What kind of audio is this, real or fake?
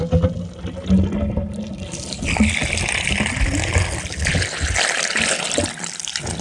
real